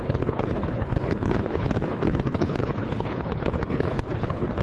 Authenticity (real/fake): fake